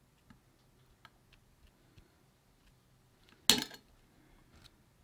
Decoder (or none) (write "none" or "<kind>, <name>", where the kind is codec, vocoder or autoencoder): none